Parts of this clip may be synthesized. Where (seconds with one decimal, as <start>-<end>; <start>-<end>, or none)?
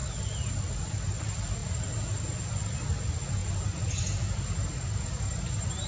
none